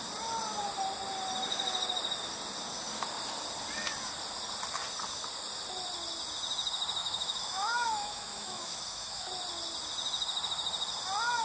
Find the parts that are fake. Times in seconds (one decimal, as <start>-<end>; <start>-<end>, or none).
7.0-9.3